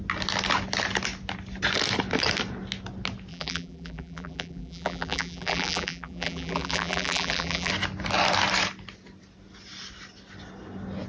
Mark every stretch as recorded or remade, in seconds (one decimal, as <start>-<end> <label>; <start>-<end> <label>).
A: 0.0-3.3 recorded; 3.3-7.7 remade; 7.7-11.1 recorded